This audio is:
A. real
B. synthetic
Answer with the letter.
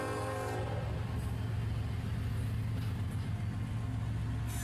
A